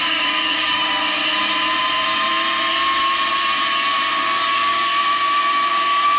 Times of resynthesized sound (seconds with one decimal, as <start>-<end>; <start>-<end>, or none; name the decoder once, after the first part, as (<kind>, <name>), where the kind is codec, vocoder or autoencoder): 0.0-1.2 (codec, DAC); 4.1-4.9; 5.7-6.2